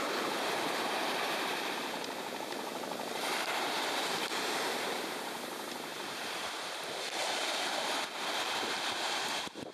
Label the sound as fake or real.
fake